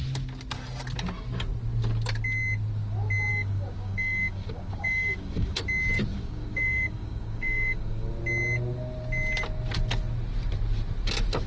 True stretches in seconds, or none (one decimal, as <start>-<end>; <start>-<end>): 0.0-3.3; 5.5-6.1; 8.1-11.5